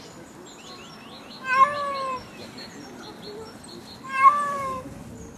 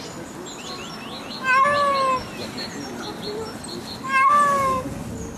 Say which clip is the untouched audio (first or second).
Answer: second